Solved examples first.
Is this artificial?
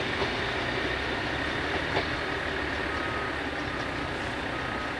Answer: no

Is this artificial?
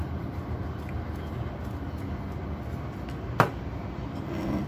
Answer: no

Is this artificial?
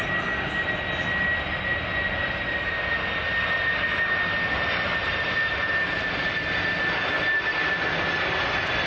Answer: no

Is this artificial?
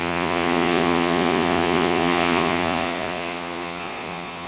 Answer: yes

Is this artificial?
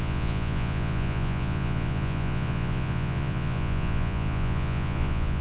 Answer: yes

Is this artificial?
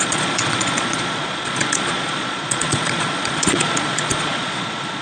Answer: yes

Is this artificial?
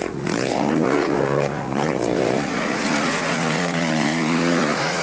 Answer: yes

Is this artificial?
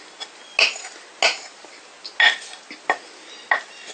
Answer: no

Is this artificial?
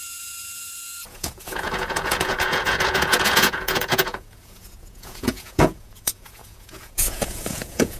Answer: yes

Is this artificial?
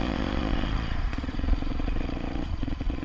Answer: yes